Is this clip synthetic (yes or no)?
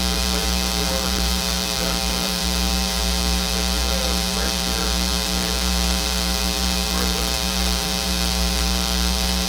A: yes